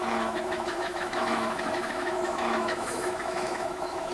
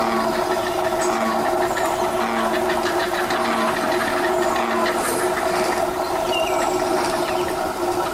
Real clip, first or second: second